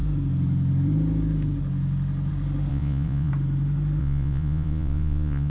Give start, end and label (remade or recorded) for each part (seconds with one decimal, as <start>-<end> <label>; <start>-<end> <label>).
0.0-2.7 recorded; 2.7-3.3 remade; 3.3-4.0 recorded; 4.0-5.5 remade